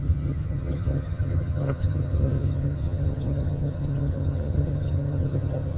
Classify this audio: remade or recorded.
remade